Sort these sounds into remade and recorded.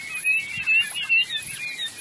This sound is recorded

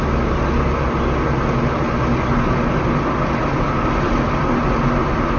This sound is recorded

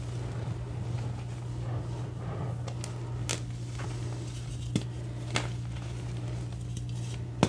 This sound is recorded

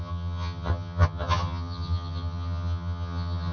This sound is remade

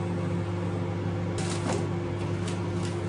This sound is recorded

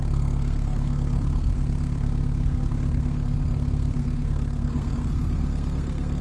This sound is remade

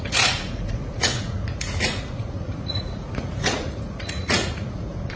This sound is remade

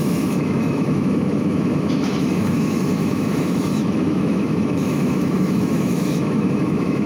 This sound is remade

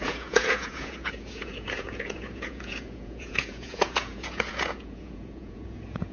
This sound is remade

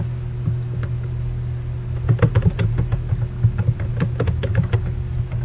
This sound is recorded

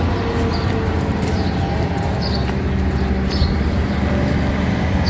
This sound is recorded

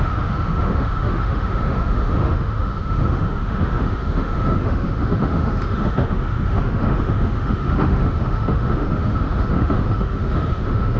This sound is remade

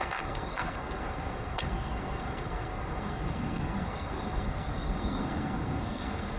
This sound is remade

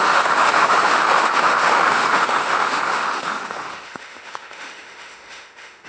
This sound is remade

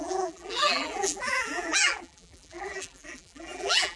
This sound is remade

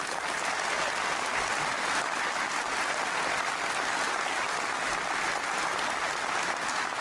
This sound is recorded